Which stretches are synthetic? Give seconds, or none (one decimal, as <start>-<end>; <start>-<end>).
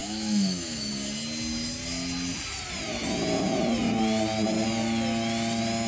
0.0-0.9